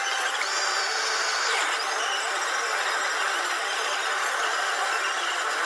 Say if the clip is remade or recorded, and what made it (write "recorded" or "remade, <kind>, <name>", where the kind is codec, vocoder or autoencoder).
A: recorded